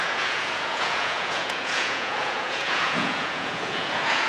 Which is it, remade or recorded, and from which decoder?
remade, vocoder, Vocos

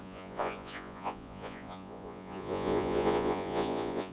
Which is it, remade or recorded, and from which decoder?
remade, vocoder, Vocos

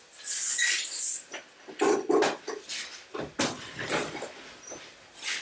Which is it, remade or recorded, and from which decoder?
recorded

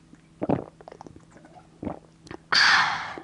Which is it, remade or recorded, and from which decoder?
recorded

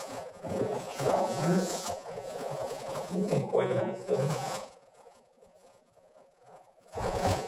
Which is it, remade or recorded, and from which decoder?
remade, vocoder, Vocos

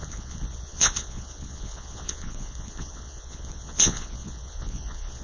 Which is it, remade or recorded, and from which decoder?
remade, vocoder, Vocos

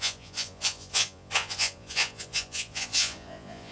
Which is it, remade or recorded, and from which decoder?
remade, vocoder, Vocos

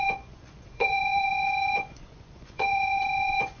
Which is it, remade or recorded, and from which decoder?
remade, vocoder, Vocos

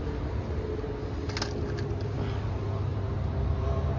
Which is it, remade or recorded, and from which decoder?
recorded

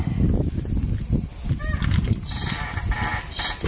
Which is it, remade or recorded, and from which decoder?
recorded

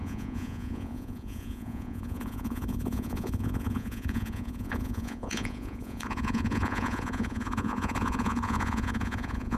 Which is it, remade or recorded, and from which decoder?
remade, vocoder, Vocos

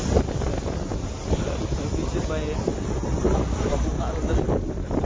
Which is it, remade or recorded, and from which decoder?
recorded